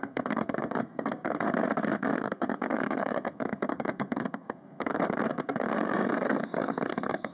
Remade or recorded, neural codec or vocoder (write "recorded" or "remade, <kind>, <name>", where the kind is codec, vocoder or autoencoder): remade, codec, SNAC